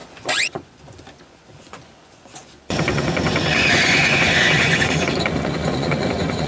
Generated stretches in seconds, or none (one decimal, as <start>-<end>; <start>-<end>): 0.0-6.5

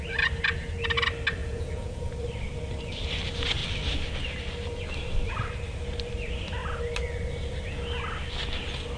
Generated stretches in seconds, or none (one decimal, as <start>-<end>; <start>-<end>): 1.4-2.1